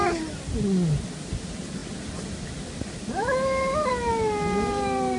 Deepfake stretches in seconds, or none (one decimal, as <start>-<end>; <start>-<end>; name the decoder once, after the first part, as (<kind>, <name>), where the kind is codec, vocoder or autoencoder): none